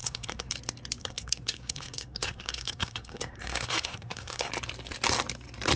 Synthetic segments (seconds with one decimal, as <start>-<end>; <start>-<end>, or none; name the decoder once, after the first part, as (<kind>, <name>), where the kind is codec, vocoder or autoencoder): 0.0-0.5 (codec, SNAC); 1.0-4.5